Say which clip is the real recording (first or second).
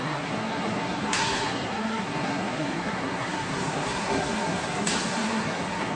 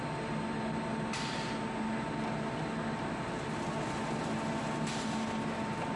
second